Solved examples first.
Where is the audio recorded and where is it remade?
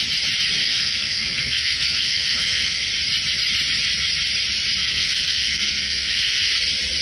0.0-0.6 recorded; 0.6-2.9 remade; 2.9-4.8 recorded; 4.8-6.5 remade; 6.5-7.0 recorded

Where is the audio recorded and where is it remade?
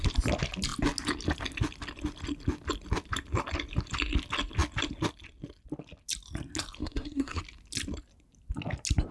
0.0-6.8 recorded; 6.8-7.4 remade; 7.4-9.1 recorded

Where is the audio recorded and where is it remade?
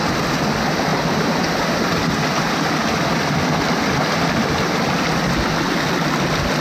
0.0-6.6 recorded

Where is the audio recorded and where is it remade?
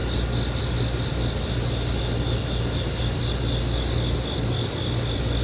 0.0-5.4 recorded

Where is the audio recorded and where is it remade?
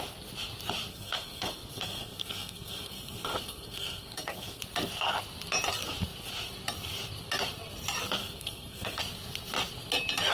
0.0-0.9 recorded; 0.9-4.6 remade; 4.6-8.2 recorded; 8.2-9.0 remade; 9.0-10.3 recorded